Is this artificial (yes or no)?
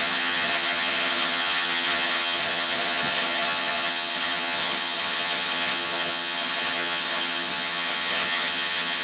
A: yes